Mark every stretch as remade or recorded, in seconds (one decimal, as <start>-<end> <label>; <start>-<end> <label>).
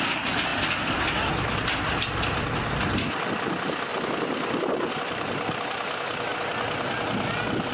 0.0-7.7 recorded